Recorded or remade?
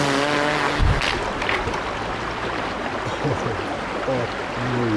recorded